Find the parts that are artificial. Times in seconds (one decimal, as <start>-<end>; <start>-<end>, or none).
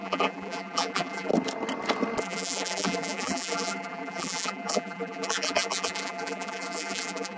0.0-1.3; 2.2-7.4